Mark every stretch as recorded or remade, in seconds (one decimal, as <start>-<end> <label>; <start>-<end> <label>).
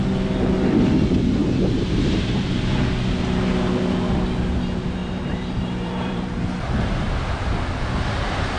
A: 0.0-1.4 recorded; 1.4-2.5 remade; 2.5-5.0 recorded; 5.0-6.4 remade; 6.4-8.6 recorded